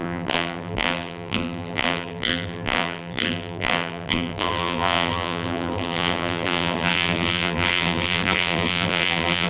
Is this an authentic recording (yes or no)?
no